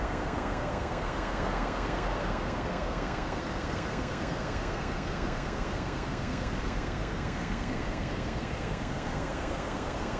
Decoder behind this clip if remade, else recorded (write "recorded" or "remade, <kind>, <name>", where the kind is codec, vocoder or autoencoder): remade, codec, SNAC